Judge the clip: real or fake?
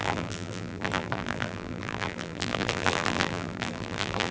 fake